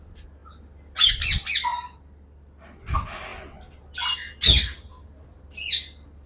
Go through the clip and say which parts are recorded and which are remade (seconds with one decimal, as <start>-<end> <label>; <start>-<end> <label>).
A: 0.0-6.3 recorded